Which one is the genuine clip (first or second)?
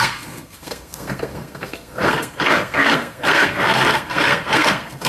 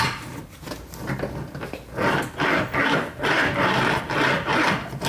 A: second